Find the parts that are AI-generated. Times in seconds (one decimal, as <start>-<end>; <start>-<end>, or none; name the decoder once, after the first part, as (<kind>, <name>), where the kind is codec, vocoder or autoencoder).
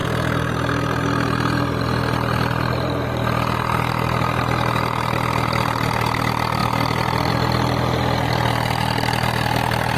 none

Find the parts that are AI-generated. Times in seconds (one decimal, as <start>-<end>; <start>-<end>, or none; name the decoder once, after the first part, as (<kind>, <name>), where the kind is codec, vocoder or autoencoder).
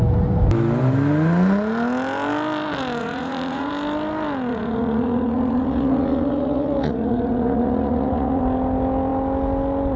3.0-3.7 (vocoder, Vocos); 4.5-8.4